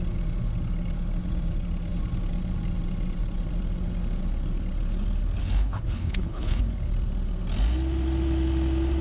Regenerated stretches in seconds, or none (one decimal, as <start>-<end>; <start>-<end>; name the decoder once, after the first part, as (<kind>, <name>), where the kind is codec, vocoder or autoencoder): 5.4-6.6 (codec, HILCodec)